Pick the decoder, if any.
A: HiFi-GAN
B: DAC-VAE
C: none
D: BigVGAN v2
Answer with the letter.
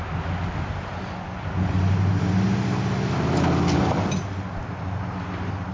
C